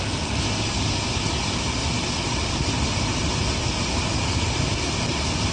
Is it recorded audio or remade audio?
recorded